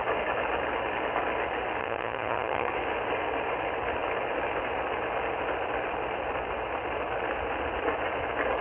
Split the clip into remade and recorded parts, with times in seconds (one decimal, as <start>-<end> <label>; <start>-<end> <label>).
0.0-1.8 recorded; 1.8-2.7 remade; 2.7-8.6 recorded

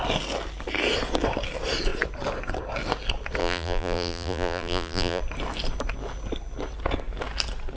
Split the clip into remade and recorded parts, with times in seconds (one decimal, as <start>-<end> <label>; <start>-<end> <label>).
0.0-3.4 recorded; 3.4-5.2 remade; 5.2-7.8 recorded

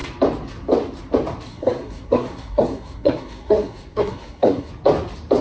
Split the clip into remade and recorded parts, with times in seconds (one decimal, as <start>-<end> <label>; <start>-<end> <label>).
0.0-1.5 recorded; 1.5-4.7 remade; 4.7-5.4 recorded